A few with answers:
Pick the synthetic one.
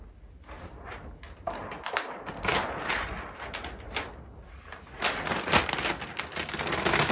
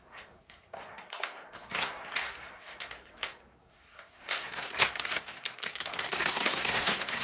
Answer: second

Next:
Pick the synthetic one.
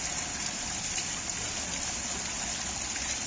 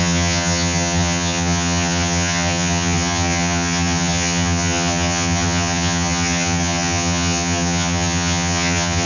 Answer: second